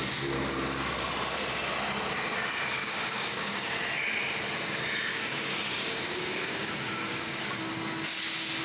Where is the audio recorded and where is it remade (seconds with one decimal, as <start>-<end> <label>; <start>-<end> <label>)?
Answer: 0.0-2.8 recorded; 2.8-3.7 remade; 3.7-5.1 recorded; 5.1-7.8 remade; 7.8-8.6 recorded